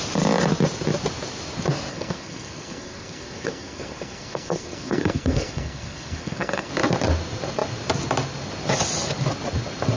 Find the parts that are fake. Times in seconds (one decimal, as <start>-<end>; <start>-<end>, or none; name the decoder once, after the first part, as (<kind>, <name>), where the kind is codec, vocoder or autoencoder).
1.9-6.7 (codec, SNAC)